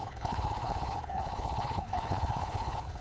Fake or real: fake